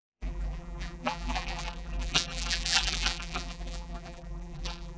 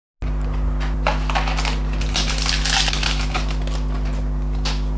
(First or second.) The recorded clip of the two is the second